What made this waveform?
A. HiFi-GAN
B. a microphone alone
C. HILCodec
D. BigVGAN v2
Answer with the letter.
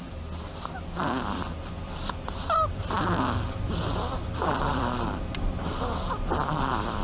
B